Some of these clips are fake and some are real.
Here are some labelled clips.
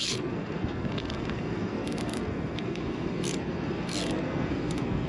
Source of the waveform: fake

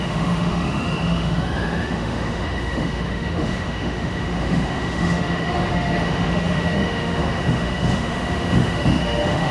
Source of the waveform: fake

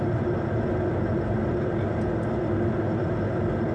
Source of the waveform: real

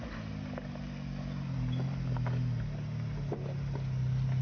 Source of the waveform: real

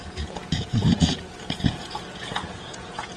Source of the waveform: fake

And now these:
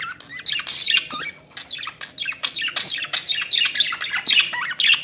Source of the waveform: real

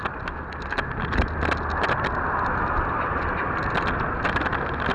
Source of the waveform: real